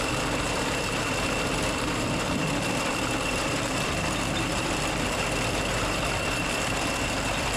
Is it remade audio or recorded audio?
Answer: remade